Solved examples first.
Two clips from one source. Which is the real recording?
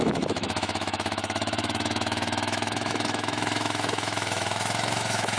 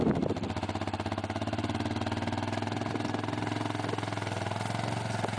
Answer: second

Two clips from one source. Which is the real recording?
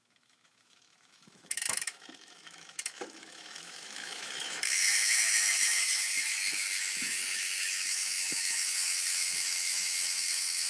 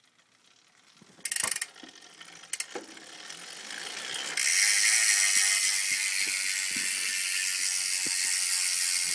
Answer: second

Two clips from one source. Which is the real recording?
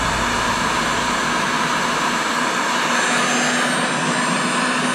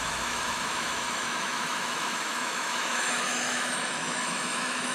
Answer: first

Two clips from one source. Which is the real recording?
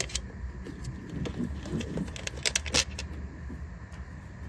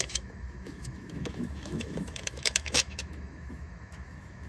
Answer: first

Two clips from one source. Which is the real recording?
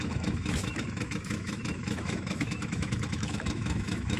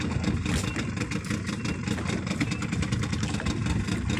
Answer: second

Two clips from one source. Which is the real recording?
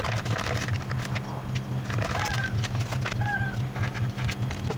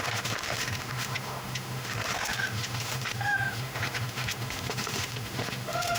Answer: first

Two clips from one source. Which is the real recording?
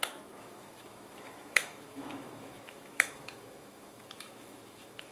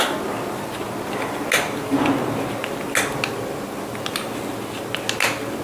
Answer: second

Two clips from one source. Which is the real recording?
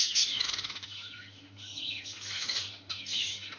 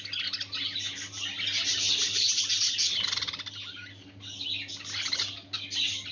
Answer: second